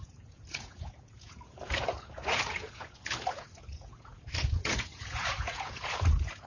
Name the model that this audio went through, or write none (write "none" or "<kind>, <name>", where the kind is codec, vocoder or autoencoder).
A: vocoder, Vocos